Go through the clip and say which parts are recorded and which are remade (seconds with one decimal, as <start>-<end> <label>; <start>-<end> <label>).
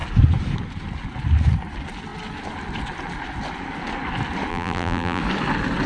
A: 0.0-4.5 recorded; 4.5-5.2 remade; 5.2-5.9 recorded